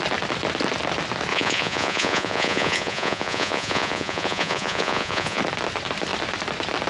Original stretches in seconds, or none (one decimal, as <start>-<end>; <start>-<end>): 0.0-1.3; 5.4-6.9